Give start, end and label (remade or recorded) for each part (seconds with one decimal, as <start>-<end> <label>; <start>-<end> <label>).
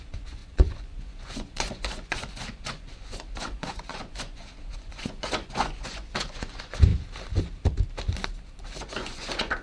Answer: 0.0-6.9 remade; 6.9-8.8 recorded; 8.8-9.6 remade